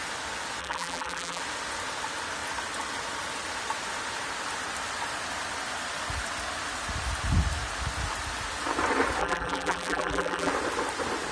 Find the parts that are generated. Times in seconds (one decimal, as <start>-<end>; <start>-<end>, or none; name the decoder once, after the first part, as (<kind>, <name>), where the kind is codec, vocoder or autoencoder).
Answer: 0.6-1.4 (vocoder, BigVGAN v2); 9.2-10.5